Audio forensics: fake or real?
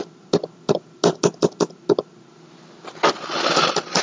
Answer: real